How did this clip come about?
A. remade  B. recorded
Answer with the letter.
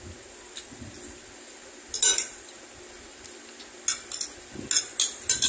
B